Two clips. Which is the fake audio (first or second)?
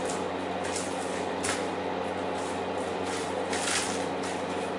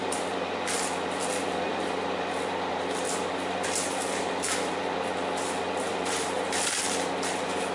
second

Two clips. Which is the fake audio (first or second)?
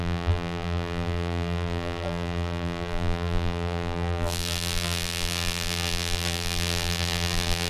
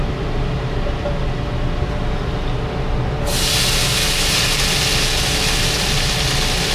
first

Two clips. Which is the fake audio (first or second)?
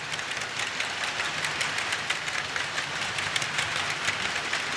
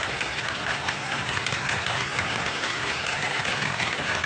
second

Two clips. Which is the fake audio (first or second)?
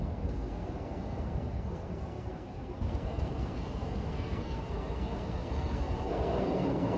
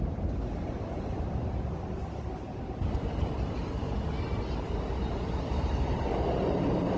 first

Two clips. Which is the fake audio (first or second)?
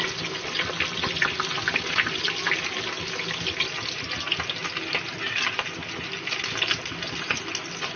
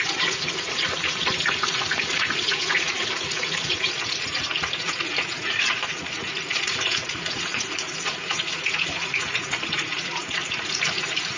second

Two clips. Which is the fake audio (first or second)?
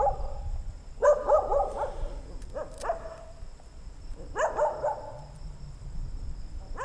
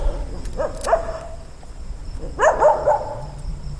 first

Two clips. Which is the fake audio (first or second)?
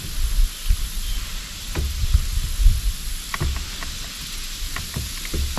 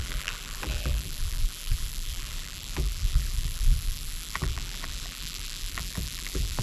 second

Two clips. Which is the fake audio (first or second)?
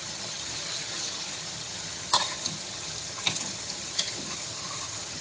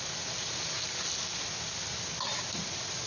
first